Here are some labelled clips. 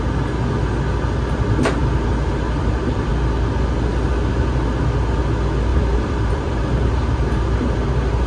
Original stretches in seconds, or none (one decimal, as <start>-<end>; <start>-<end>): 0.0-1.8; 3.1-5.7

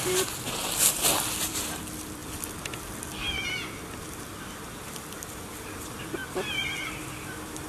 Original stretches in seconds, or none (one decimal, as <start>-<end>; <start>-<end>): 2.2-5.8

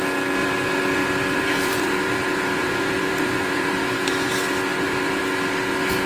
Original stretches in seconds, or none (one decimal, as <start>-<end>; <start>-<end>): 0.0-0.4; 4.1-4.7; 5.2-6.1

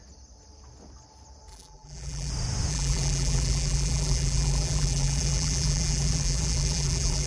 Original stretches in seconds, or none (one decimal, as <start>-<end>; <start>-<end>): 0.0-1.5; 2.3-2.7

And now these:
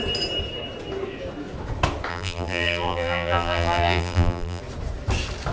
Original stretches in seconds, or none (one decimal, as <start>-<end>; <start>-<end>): 0.0-2.1; 4.6-5.5

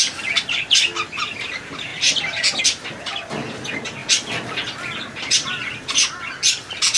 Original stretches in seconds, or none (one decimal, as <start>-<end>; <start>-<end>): 0.0-3.1; 3.6-7.0

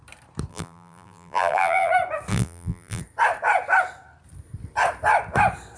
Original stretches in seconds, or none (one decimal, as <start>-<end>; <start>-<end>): 0.0-0.5; 1.9-2.3; 3.0-5.8